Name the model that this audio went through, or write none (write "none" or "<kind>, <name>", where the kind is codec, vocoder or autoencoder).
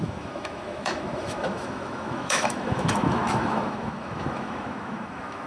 autoencoder, DAC-VAE